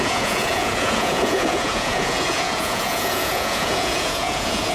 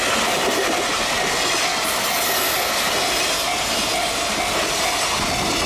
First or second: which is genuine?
second